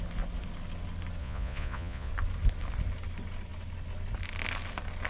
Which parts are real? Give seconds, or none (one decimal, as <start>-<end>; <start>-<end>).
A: 0.0-1.2; 2.1-5.1